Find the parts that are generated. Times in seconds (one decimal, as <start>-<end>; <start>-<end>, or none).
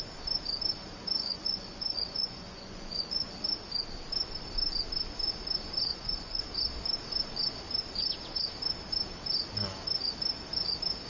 1.2-3.3; 5.9-6.4